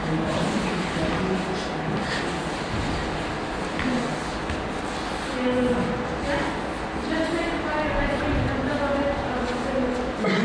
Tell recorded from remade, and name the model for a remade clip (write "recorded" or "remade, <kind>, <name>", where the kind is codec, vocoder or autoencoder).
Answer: recorded